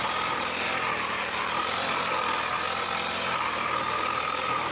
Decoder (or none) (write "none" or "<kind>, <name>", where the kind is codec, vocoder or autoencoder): none